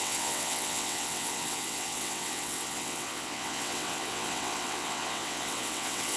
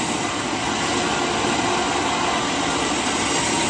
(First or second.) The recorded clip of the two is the second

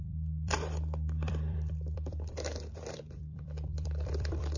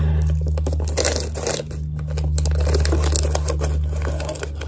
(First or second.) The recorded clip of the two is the second